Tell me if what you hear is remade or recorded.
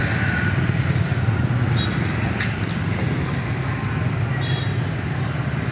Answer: recorded